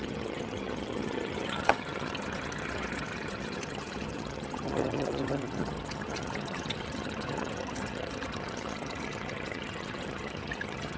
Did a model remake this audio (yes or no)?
yes